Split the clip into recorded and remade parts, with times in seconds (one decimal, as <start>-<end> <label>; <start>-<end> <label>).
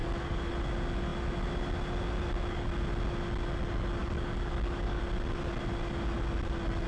0.0-0.5 remade; 0.5-4.0 recorded; 4.0-5.0 remade; 5.0-6.9 recorded